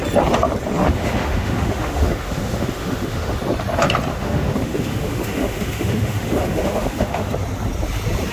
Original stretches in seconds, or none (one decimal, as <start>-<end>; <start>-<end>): 0.0-0.8; 3.4-4.1; 7.3-8.3